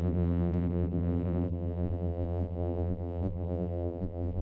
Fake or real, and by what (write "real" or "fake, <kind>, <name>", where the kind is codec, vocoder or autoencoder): fake, vocoder, BigVGAN v2